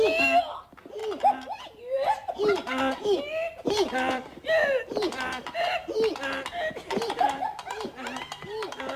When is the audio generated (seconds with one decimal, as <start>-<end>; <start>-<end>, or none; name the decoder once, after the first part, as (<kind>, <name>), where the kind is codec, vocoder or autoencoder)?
none